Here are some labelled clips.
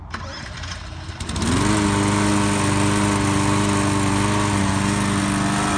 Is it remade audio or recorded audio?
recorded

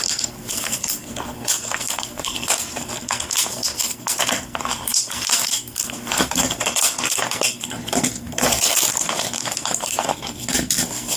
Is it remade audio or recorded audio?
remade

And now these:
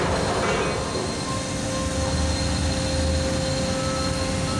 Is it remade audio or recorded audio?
recorded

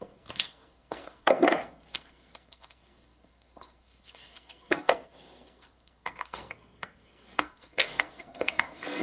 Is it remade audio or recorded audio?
remade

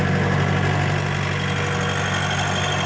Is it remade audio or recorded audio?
recorded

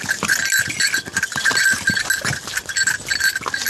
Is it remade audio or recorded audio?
recorded